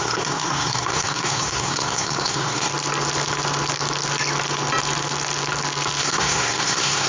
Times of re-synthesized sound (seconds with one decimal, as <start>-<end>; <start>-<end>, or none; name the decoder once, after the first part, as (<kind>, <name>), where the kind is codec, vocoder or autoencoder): 0.0-2.7 (codec, SNAC); 6.0-7.1